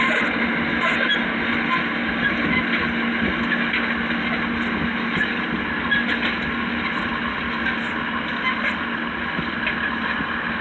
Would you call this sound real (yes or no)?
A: yes